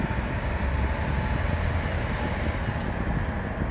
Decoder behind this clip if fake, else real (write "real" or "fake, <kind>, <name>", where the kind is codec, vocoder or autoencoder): real